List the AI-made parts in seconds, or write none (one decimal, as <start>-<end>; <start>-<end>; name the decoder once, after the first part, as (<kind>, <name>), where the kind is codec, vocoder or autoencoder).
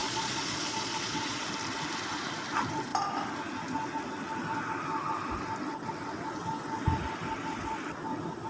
0.0-1.5 (vocoder, Vocos)